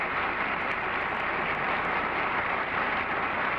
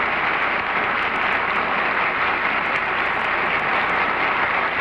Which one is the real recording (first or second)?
second